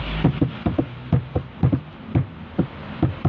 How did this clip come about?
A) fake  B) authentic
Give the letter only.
B